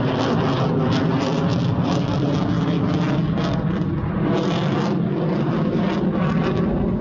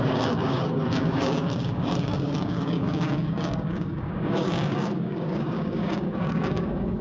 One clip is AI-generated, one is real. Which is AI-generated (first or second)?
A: second